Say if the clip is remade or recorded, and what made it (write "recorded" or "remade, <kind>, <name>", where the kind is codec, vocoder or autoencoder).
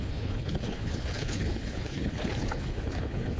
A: remade, codec, HILCodec